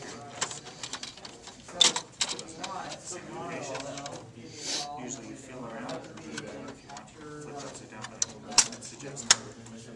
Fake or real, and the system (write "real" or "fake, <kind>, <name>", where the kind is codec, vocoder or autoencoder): real